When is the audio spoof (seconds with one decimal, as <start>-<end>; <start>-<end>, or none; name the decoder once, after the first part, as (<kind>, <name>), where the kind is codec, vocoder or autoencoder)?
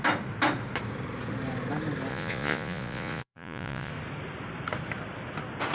2.1-3.9 (vocoder, Vocos)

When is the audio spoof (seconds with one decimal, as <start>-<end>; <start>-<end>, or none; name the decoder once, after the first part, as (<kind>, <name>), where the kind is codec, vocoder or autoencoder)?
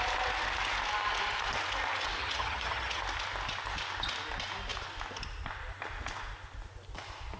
2.2-3.0 (vocoder, HiFi-GAN)